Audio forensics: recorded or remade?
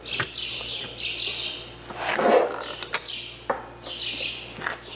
recorded